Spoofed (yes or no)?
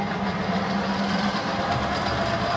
no